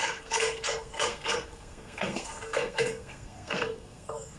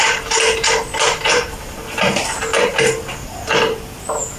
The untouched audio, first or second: second